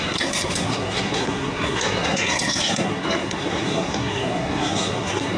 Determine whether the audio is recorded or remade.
remade